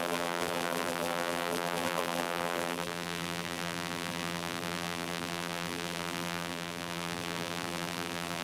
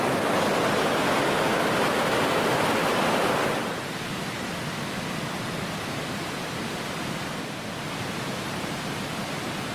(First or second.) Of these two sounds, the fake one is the first